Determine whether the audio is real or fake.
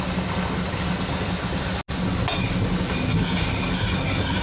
real